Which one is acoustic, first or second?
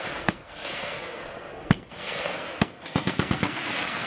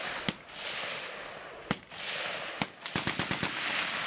second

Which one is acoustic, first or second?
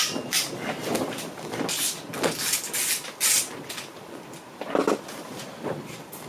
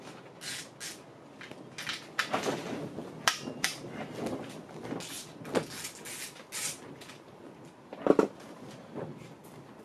second